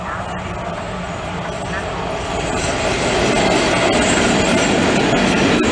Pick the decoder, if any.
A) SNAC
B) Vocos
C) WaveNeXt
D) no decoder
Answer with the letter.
D